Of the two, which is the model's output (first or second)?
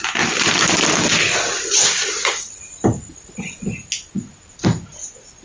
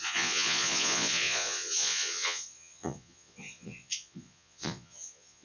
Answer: second